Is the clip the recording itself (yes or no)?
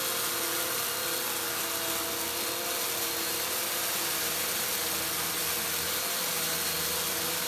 yes